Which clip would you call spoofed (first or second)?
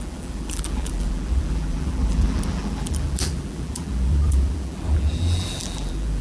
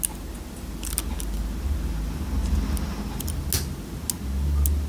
first